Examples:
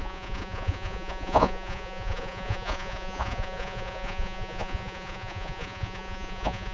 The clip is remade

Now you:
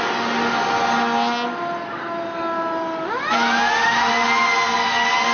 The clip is recorded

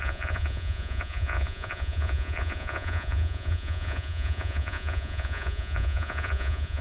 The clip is remade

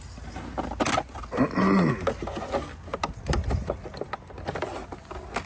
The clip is recorded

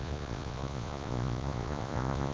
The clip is remade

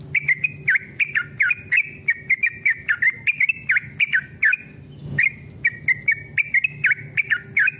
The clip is recorded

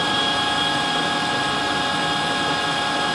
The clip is recorded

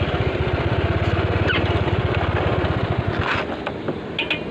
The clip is recorded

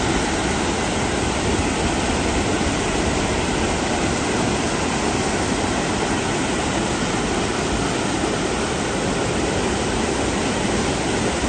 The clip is recorded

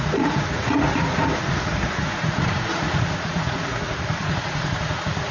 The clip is remade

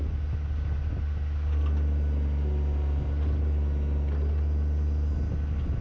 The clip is recorded